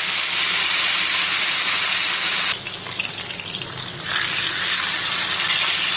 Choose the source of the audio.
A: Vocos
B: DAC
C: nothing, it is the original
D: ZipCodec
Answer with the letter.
C